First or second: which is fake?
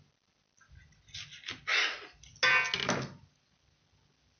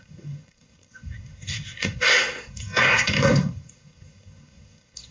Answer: second